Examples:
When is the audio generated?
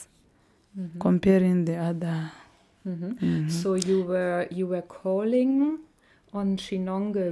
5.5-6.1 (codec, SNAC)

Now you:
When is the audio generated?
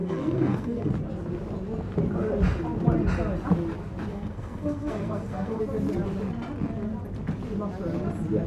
0.0-0.9 (codec, SNAC); 4.1-5.6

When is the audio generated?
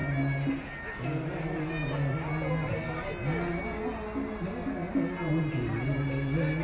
none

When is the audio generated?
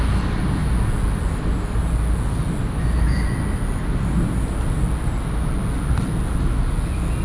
none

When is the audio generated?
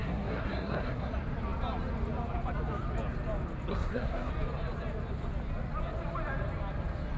0.0-1.1 (codec, SNAC); 3.7-4.3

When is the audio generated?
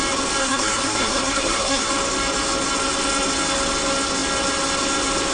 0.4-1.9 (codec, SNAC)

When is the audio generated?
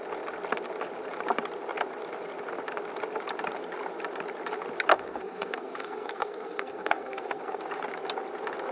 4.9-7.6 (codec, SNAC)